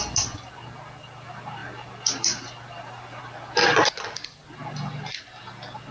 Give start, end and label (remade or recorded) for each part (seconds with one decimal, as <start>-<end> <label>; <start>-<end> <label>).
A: 0.0-1.6 recorded; 1.6-3.2 remade; 3.2-5.9 recorded